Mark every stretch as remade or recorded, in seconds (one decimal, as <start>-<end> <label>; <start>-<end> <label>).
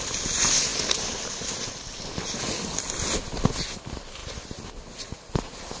0.0-4.2 recorded; 4.2-4.7 remade; 4.7-5.8 recorded